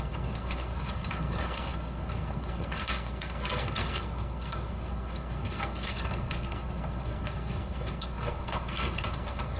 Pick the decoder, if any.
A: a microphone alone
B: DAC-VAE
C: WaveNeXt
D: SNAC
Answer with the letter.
D